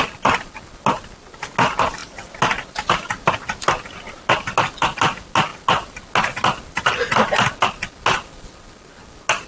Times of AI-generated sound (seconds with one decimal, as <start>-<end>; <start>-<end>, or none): none